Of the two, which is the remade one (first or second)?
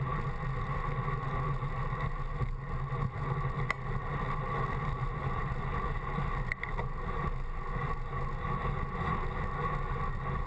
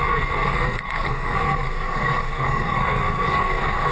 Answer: second